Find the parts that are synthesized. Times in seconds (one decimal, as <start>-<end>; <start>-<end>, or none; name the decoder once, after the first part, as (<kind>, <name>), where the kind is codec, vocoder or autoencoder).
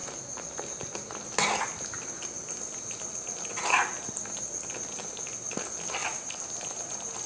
6.0-6.5 (vocoder, BigVGAN v2)